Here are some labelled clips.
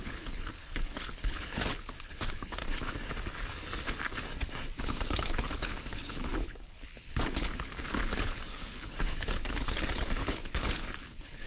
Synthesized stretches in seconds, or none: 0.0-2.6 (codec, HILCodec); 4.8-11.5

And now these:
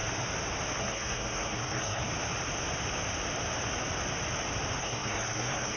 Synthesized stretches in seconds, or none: 0.8-2.1 (codec, SNAC); 4.8-5.8

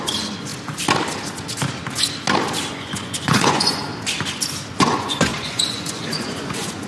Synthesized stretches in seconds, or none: 0.0-0.5 (vocoder, Vocos); 2.7-3.9; 4.7-6.9

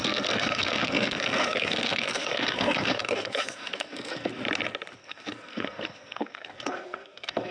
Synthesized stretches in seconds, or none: 0.0-4.3 (codec, SNAC); 5.0-7.5

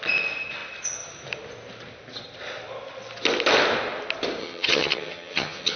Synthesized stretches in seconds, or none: 4.4-5.8 (vocoder, HiFi-GAN)

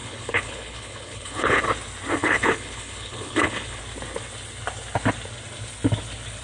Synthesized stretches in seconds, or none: 0.0-1.6 (codec, HILCodec); 2.2-3.8

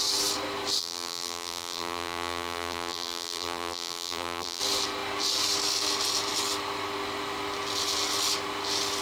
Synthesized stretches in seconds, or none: 0.8-4.6 (vocoder, BigVGAN v2)